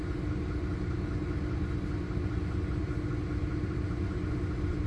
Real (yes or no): yes